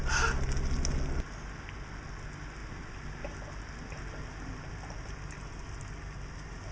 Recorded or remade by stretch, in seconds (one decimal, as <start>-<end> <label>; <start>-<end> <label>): 0.0-6.7 recorded